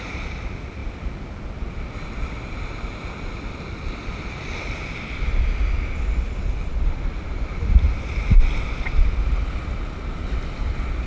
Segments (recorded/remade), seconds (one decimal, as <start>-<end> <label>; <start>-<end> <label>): 0.0-11.1 recorded